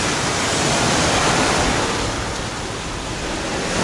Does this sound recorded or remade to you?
recorded